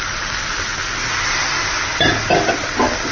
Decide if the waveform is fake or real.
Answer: real